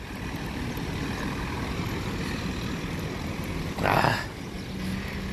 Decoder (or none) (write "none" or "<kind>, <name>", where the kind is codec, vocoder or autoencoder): none